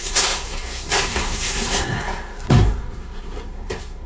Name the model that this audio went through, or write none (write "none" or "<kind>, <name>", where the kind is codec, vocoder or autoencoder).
codec, SNAC